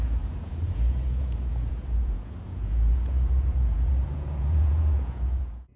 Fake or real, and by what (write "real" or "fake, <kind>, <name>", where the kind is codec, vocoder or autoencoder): fake, vocoder, Vocos